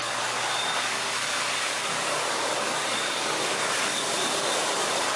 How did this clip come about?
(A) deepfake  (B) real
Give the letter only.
A